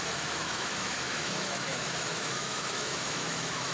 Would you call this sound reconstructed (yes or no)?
yes